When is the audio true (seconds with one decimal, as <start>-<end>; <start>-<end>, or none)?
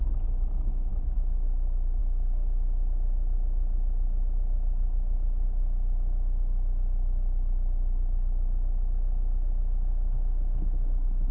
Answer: 0.0-11.3